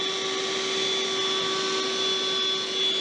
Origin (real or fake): real